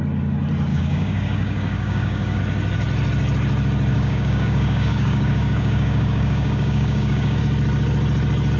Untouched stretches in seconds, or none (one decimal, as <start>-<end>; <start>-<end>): 0.0-0.7; 2.4-3.9; 7.4-8.6